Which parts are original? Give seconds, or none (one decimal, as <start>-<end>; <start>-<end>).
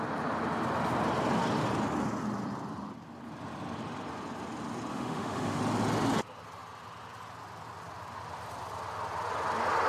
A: 0.0-4.9; 5.6-9.9